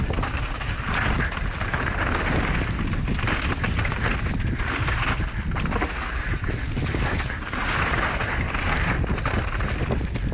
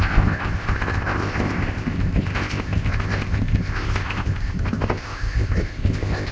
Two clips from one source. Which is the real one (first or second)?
first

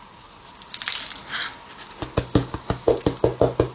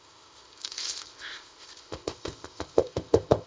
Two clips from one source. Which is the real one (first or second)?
first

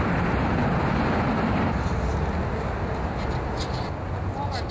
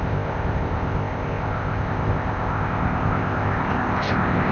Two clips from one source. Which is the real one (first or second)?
first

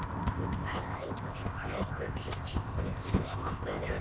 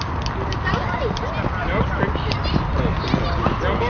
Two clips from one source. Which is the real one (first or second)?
second